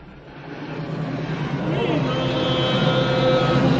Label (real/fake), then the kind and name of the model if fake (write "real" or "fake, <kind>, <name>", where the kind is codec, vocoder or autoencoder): real